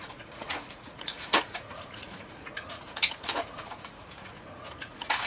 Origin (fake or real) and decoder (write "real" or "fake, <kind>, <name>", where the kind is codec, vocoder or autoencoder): fake, vocoder, Vocos